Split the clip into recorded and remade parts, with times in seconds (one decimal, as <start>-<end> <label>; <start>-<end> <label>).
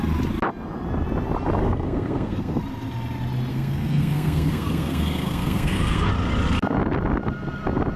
0.0-1.6 recorded; 1.6-2.6 remade; 2.6-3.5 recorded; 3.5-6.1 remade; 6.1-8.0 recorded